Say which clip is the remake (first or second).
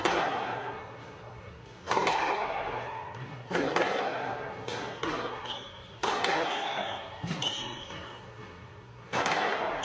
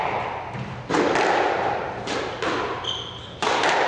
first